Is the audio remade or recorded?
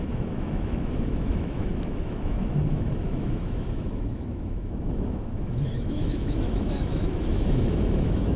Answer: remade